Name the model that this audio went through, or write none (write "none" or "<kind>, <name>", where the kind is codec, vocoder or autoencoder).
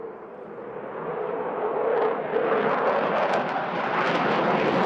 none